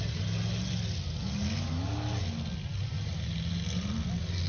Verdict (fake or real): real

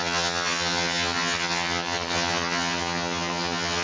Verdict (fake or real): fake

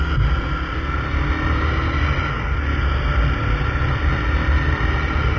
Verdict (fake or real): real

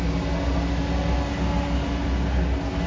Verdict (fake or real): real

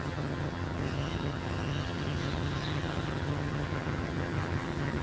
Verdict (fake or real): fake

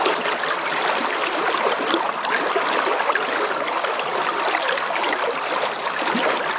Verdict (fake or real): real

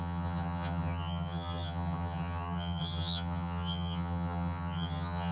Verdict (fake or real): fake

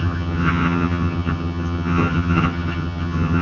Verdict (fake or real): fake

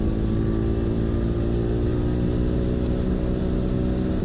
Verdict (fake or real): real